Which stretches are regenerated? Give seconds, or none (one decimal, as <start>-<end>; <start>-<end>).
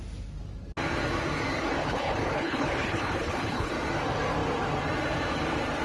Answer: 1.8-3.7